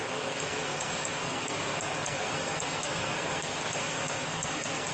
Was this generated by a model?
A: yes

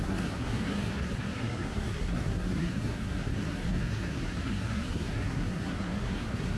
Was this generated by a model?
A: yes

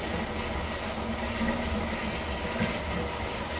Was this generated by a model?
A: no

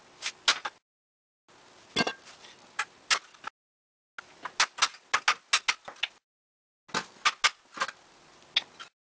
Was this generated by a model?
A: no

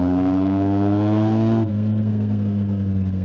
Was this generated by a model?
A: yes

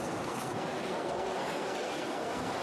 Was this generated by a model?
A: yes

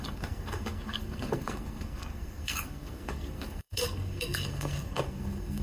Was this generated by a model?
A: yes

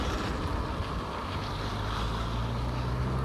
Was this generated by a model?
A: no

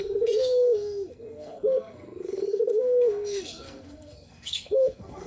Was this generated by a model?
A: yes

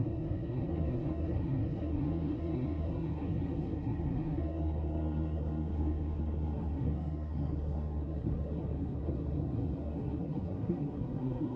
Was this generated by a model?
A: yes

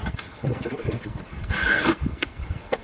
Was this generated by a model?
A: yes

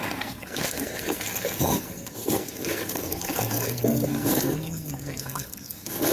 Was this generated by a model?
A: yes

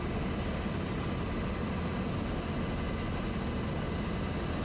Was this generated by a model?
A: no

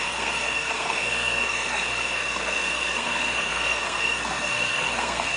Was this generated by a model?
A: yes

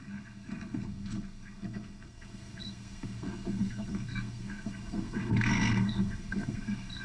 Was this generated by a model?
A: yes